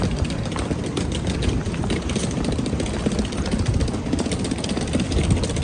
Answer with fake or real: fake